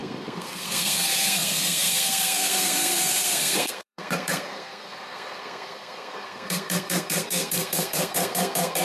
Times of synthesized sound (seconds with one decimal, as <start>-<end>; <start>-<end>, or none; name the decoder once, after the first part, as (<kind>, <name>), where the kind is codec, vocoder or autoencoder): 0.0-8.8 (codec, SNAC)